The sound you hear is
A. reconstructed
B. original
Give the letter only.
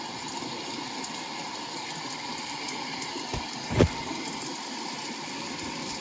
A